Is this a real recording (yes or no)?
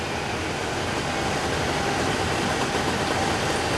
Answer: yes